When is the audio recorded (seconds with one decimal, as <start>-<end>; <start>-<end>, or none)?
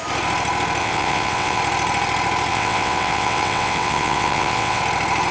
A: 0.0-0.8; 1.6-2.5; 4.8-5.3